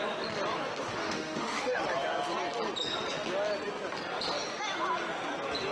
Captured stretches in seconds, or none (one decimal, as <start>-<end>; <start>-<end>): 0.0-0.9; 1.8-5.7